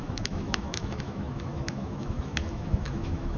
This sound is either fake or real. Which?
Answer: fake